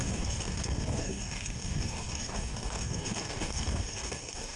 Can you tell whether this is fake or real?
fake